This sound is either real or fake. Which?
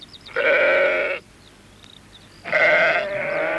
real